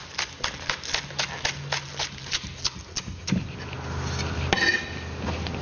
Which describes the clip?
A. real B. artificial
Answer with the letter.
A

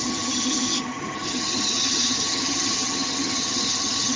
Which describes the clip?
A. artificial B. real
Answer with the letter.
A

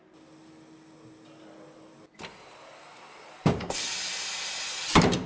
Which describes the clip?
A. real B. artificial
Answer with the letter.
A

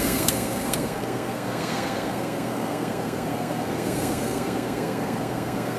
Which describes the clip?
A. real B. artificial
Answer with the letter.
B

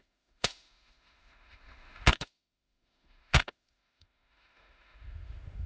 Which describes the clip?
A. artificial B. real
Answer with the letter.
A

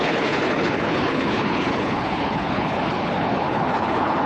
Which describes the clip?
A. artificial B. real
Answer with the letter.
A